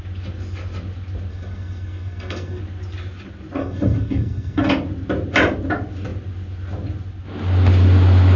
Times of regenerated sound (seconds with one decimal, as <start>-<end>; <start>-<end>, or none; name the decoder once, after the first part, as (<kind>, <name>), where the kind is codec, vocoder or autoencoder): 1.3-2.6 (codec, SNAC); 3.6-4.7